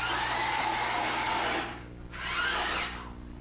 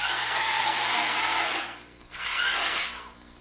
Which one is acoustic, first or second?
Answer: first